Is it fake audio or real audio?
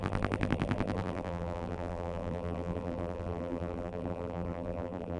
fake